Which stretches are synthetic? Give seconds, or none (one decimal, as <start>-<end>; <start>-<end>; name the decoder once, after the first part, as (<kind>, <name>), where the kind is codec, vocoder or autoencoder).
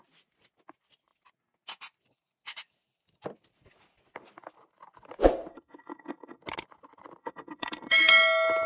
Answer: 5.5-6.4 (codec, SNAC); 7.2-8.1